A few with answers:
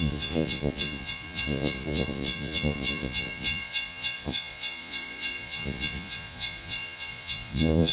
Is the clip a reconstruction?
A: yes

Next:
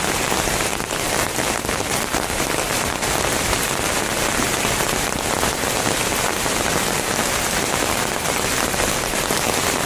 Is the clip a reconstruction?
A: no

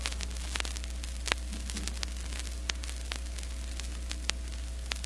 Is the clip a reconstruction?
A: no